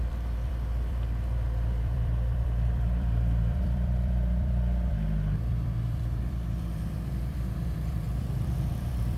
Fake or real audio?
fake